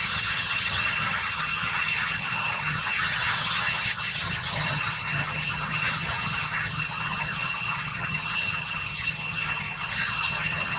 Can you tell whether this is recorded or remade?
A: remade